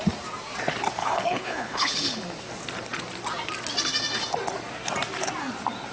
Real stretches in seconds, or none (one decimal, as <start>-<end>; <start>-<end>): 0.0-1.0; 2.2-5.9

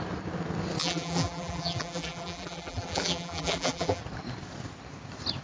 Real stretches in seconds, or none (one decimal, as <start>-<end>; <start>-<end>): 0.0-0.8; 4.0-5.4

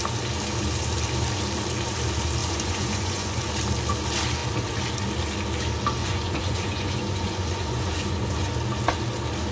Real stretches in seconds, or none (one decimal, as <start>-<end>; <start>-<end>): 0.0-2.4; 3.5-6.0; 8.5-9.5

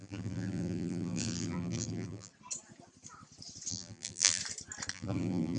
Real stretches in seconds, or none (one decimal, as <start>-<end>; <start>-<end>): 2.3-3.7; 4.4-4.9

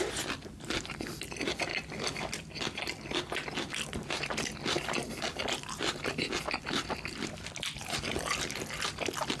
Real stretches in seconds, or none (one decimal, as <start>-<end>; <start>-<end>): 0.0-9.4

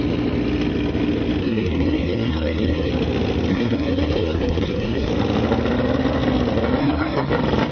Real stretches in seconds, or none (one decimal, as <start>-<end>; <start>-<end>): 0.0-1.4; 2.9-3.5; 5.1-6.8; 7.3-7.7

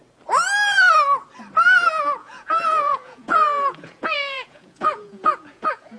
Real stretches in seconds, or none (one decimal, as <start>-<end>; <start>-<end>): 0.0-2.2

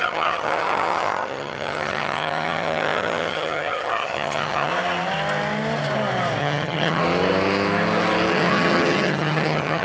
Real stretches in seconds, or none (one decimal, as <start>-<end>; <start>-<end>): 4.7-6.4; 7.0-8.3